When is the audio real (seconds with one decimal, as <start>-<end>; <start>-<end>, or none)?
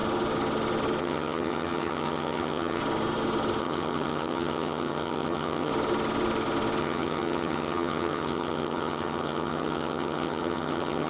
0.0-1.0; 2.8-3.6; 5.7-6.8